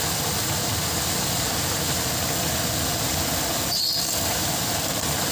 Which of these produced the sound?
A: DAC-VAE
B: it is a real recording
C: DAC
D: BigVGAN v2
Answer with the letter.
B